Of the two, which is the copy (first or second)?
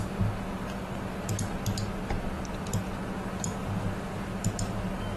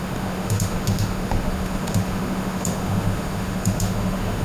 second